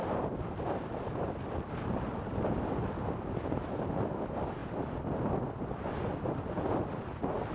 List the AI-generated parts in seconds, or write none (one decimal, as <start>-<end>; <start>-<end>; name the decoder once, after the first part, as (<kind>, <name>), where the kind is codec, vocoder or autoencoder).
none